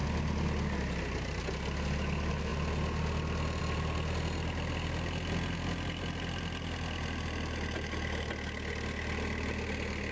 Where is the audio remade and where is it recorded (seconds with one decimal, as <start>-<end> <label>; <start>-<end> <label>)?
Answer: 0.0-10.1 recorded